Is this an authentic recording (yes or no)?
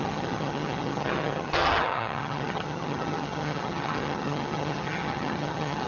no